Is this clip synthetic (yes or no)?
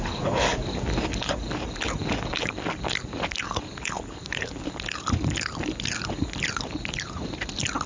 no